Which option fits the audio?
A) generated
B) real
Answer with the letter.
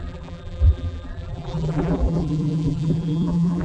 A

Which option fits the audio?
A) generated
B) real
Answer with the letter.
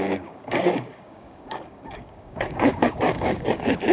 A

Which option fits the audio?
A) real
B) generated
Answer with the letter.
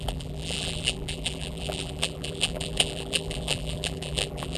B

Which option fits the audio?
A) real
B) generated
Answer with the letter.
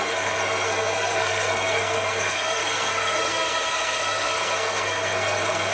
B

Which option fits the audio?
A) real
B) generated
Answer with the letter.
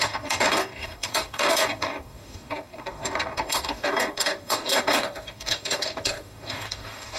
B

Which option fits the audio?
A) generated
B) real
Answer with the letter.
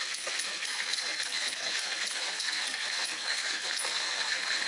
A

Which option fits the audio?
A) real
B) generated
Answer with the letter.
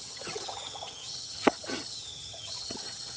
B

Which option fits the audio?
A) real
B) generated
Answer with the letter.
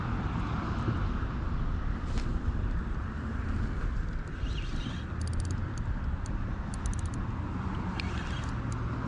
A